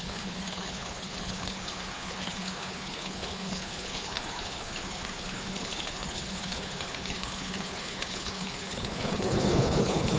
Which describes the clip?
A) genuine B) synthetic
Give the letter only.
B